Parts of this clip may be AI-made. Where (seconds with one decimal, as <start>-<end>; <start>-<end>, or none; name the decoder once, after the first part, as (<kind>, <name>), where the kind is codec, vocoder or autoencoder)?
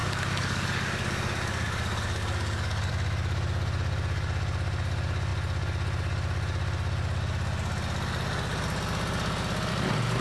0.0-2.9 (codec, DAC)